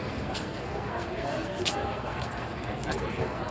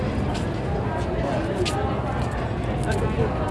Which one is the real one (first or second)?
second